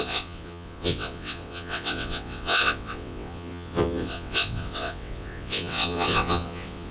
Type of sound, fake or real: fake